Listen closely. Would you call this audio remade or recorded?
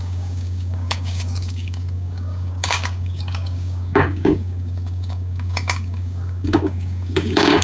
remade